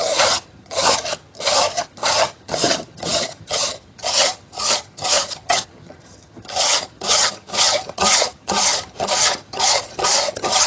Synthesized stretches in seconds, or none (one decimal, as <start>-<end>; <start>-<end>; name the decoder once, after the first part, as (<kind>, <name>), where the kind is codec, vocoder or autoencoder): 0.0-10.7 (vocoder, HiFi-GAN)